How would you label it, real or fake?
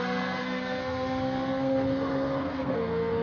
fake